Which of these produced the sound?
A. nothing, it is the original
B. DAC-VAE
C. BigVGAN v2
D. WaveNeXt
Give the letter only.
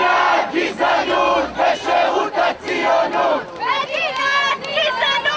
C